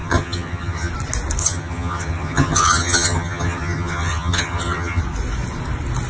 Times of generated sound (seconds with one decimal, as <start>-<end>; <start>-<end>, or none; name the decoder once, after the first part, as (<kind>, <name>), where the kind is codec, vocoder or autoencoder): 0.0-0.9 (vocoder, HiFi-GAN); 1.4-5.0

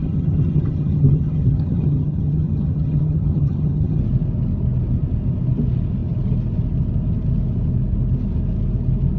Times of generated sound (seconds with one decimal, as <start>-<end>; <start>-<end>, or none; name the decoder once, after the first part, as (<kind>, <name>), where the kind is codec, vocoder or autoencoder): 0.0-4.0 (vocoder, HiFi-GAN)

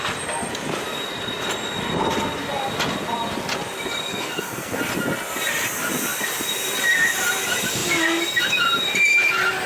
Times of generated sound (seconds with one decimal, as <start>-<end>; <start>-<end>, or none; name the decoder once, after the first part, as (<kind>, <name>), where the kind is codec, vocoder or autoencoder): 4.1-4.8 (codec, SNAC)

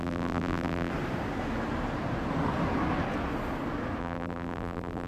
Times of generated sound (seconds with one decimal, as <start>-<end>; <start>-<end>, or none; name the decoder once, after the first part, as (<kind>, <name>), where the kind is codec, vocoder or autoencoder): 0.0-0.9 (vocoder, BigVGAN v2); 4.0-5.1

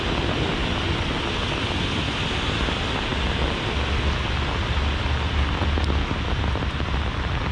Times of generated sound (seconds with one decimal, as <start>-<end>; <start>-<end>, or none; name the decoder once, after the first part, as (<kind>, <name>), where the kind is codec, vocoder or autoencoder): none

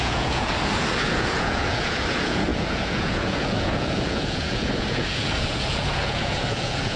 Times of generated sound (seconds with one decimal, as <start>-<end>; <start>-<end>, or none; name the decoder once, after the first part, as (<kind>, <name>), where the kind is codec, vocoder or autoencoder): 0.0-7.0 (vocoder, Vocos)